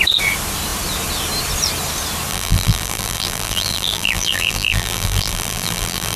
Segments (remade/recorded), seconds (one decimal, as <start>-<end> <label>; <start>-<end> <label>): 0.0-2.3 recorded; 2.3-6.2 remade